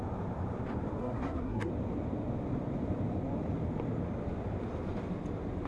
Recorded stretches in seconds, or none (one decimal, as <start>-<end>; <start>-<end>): 0.0-1.0; 1.7-5.7